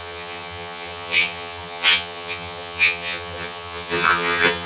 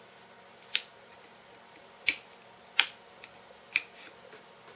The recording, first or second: second